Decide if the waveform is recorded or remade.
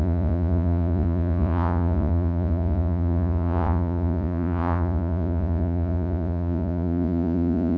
remade